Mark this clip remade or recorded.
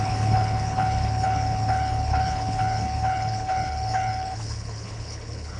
remade